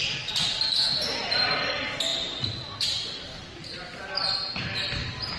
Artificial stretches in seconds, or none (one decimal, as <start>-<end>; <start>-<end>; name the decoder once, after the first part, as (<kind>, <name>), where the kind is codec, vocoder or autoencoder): none